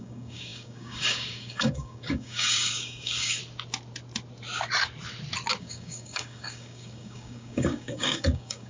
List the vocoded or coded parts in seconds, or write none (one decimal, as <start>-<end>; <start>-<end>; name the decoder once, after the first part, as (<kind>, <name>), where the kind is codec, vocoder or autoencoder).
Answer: 0.0-3.4 (codec, DAC); 5.6-8.7